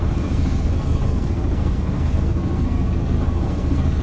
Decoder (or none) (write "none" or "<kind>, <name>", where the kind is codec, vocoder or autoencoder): codec, SNAC